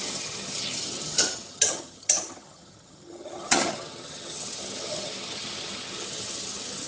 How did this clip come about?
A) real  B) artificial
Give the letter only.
B